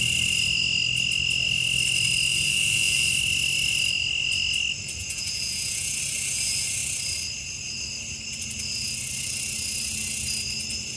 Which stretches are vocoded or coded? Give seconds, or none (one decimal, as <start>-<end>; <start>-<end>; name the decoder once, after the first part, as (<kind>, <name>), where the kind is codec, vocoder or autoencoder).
2.3-3.1 (vocoder, Vocos); 5.0-6.0